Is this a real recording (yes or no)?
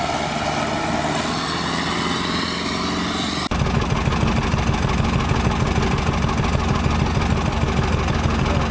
yes